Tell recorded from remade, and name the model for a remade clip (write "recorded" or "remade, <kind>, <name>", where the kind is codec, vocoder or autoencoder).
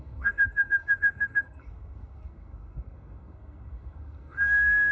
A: remade, codec, SNAC